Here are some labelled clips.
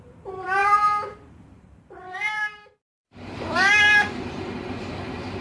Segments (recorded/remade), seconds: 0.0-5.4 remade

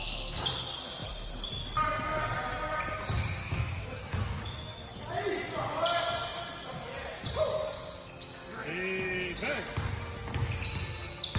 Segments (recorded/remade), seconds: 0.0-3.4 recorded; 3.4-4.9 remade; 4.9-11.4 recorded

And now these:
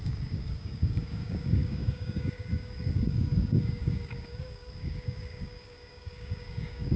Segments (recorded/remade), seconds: 0.0-7.0 remade

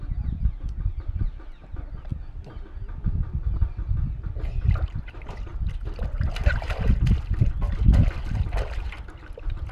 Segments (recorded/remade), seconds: 0.0-2.1 remade; 2.1-5.0 recorded; 5.0-5.5 remade; 5.5-8.4 recorded; 8.4-9.7 remade